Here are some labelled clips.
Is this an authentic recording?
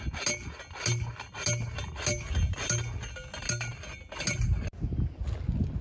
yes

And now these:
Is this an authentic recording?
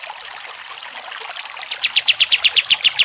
yes